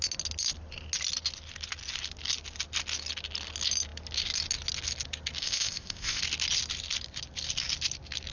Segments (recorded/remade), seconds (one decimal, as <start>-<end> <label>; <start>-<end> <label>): 0.0-5.4 recorded; 5.4-6.2 remade; 6.2-8.3 recorded